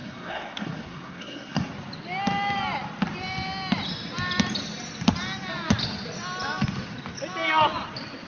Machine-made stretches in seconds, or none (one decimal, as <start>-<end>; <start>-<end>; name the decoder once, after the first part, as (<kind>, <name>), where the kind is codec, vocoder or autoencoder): 0.0-1.7 (codec, SNAC)